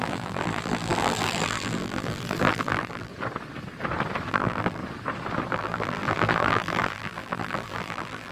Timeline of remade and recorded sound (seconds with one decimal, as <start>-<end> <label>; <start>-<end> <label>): 0.0-3.1 remade; 3.1-4.3 recorded; 4.3-4.8 remade; 4.8-5.5 recorded; 5.5-8.3 remade